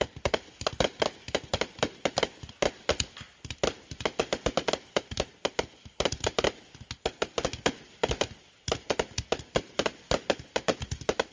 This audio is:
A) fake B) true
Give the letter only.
B